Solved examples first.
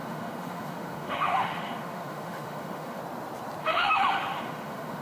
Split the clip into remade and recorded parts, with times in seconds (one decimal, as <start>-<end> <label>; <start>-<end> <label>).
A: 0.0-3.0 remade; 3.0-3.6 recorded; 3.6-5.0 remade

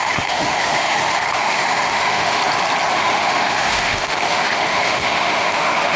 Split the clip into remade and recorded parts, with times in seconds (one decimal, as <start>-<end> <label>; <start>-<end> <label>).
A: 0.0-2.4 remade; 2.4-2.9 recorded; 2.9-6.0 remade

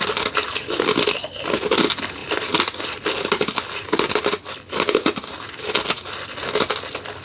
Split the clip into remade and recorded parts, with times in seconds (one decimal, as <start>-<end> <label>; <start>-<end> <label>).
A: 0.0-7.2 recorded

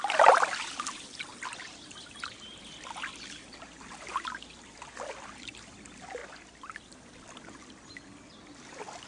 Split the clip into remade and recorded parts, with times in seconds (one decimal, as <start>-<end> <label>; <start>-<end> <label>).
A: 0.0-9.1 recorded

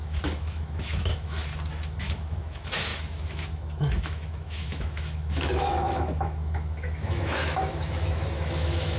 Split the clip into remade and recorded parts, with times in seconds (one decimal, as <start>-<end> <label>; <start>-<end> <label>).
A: 0.0-1.4 remade; 1.4-2.0 recorded; 2.0-9.0 remade

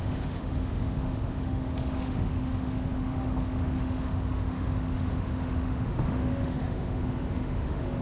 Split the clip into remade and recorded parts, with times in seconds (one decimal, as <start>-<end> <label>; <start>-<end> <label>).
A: 0.0-8.0 remade